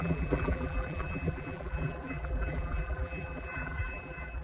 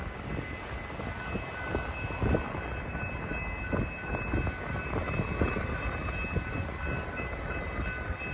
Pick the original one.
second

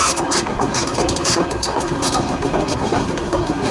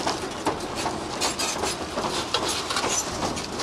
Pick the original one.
second